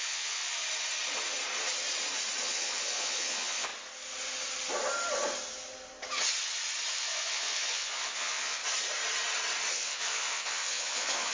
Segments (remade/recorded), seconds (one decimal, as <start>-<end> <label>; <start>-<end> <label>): 0.0-0.6 remade; 0.6-2.4 recorded; 2.4-3.7 remade; 3.7-6.9 recorded; 6.9-8.6 remade; 8.6-9.7 recorded; 9.7-11.3 remade